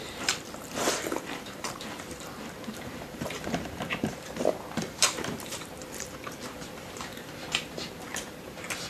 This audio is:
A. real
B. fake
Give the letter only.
B